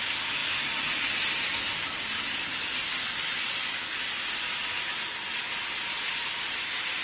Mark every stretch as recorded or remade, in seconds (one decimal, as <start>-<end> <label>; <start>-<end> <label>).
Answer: 0.0-7.0 recorded